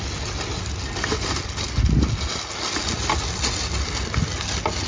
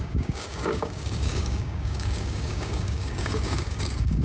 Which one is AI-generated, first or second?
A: second